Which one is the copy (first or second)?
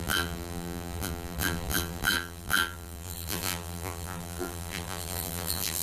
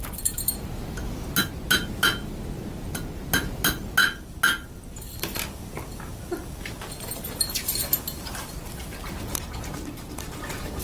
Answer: first